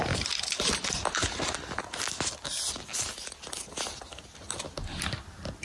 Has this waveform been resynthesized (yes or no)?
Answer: no